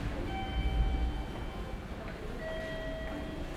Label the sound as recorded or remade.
recorded